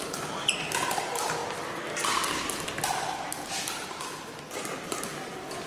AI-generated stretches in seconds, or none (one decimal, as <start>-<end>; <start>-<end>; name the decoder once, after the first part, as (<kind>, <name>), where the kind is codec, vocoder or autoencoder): none